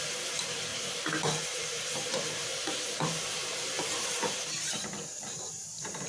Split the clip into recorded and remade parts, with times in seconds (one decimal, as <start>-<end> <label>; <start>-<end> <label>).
0.0-6.1 remade